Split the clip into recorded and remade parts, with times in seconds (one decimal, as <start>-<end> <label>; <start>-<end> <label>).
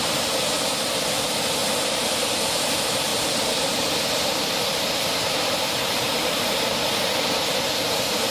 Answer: 0.0-1.6 recorded; 1.6-2.7 remade; 2.7-3.1 recorded; 3.1-6.3 remade; 6.3-8.3 recorded